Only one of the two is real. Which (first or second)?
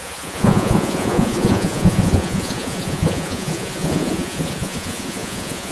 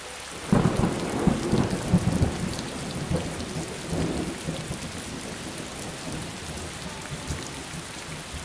second